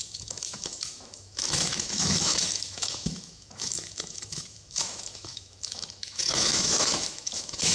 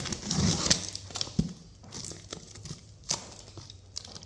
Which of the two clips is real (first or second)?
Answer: second